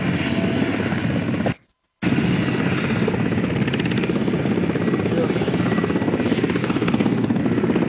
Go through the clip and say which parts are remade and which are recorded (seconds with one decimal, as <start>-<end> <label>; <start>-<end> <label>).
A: 0.0-6.6 recorded; 6.6-7.4 remade; 7.4-7.9 recorded